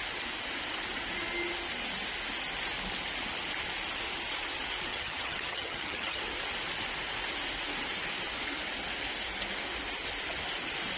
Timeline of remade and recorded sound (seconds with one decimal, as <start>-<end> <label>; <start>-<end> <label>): 0.0-4.9 recorded; 4.9-6.2 remade; 6.2-11.0 recorded